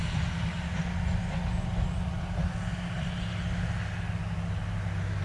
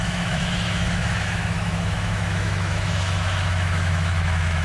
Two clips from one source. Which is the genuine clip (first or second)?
first